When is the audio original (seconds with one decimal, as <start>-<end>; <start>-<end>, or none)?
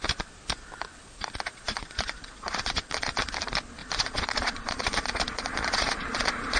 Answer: 0.0-1.0; 3.3-3.8